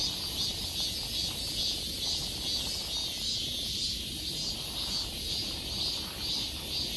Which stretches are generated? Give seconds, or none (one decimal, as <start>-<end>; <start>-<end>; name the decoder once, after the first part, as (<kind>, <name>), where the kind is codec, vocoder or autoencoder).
none